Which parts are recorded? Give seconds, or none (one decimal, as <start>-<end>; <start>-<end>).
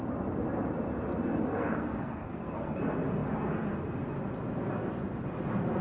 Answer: 0.0-1.5; 2.8-5.8